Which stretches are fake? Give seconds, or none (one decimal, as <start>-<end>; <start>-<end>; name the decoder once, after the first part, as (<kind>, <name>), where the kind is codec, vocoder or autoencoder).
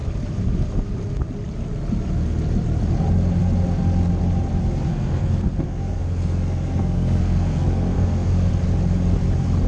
4.9-8.5 (codec, SNAC)